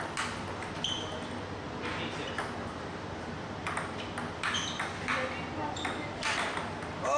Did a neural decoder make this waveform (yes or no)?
no